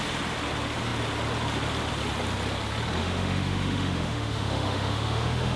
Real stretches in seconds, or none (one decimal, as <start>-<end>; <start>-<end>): 0.0-3.0